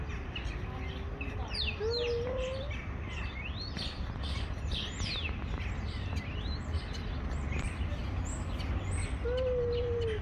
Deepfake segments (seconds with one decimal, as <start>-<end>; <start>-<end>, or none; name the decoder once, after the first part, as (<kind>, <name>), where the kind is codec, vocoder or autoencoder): none